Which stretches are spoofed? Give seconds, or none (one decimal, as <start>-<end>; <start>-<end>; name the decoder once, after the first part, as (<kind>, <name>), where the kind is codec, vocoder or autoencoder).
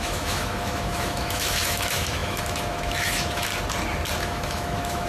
0.0-3.5 (autoencoder, DAC-VAE); 4.2-5.1